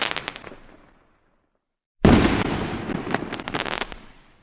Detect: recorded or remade recorded